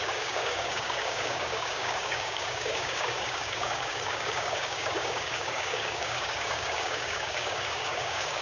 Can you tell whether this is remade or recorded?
remade